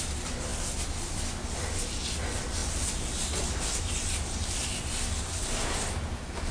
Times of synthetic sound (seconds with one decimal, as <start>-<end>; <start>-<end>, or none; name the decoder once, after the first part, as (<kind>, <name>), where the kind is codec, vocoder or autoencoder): none

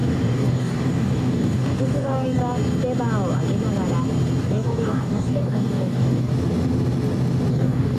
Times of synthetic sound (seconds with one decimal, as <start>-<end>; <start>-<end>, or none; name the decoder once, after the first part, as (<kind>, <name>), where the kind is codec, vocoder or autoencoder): 0.0-2.4 (codec, DAC); 4.4-6.3; 7.5-8.0